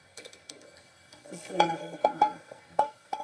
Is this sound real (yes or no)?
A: no